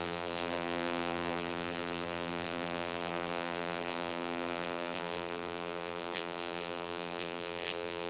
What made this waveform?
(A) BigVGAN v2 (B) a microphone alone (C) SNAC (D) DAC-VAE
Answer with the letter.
A